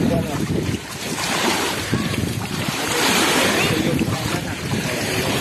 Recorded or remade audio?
remade